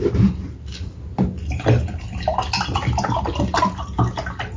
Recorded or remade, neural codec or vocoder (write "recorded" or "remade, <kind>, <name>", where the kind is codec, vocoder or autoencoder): recorded